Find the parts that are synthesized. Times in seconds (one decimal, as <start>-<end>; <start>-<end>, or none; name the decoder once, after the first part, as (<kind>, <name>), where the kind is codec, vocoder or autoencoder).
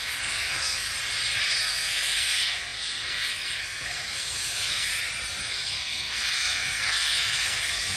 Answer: 0.0-0.9 (codec, SNAC); 1.6-4.9; 5.4-8.0